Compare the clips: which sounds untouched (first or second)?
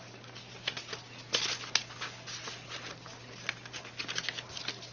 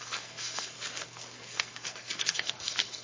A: first